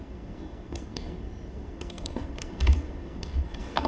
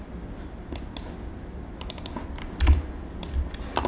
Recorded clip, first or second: second